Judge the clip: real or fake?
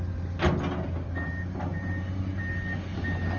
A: real